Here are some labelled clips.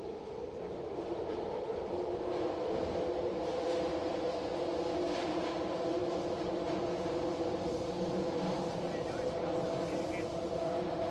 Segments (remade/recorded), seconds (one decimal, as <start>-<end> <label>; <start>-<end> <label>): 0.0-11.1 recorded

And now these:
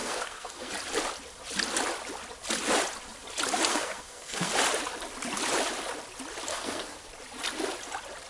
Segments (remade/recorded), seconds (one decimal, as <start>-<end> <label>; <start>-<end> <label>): 0.0-0.7 remade; 0.7-3.7 recorded; 3.7-4.5 remade; 4.5-6.5 recorded; 6.5-7.1 remade; 7.1-8.3 recorded

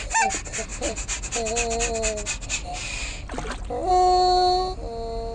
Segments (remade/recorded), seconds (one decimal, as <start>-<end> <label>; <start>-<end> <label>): 0.0-5.3 recorded

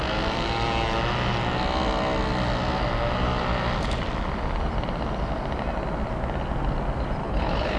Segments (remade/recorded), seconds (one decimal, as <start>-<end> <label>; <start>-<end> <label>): 0.0-7.2 recorded; 7.2-7.8 remade